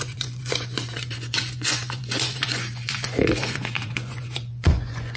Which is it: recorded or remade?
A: remade